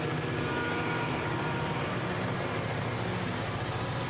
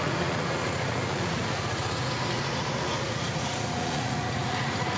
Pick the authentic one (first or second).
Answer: first